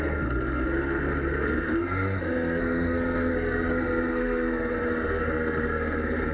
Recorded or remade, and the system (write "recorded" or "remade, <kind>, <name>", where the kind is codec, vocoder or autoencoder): remade, codec, SNAC